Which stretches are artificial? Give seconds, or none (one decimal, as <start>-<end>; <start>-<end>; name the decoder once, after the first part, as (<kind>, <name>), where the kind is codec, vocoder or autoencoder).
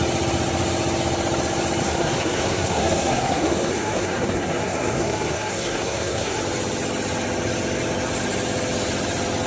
1.8-6.4 (codec, SNAC)